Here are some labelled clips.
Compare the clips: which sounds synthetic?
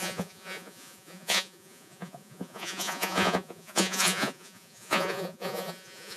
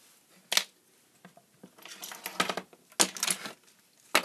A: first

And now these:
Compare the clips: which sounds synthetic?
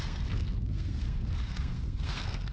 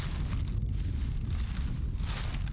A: first